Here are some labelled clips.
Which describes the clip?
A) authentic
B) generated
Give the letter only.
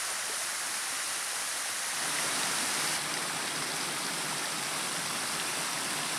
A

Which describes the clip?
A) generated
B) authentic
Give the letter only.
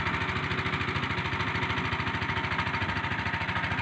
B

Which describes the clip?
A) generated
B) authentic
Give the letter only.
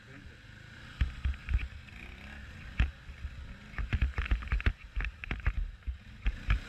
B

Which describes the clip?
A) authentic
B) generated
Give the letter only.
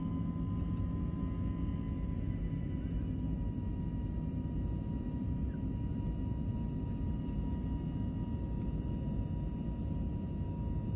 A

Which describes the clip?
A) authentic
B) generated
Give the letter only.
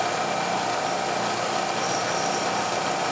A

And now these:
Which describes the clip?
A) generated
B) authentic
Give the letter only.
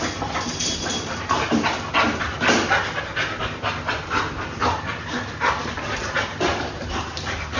B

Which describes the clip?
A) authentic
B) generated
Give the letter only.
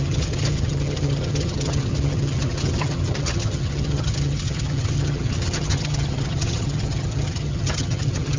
B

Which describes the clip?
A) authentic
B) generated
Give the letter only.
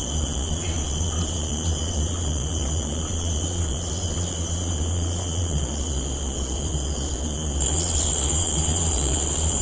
B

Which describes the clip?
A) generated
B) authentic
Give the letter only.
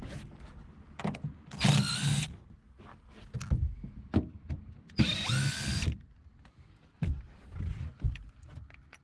B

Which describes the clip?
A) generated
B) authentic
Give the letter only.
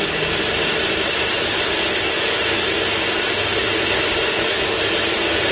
B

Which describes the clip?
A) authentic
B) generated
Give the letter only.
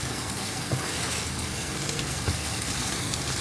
B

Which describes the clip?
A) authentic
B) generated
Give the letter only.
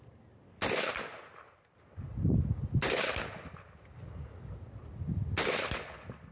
A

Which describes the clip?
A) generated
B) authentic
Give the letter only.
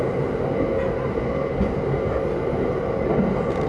B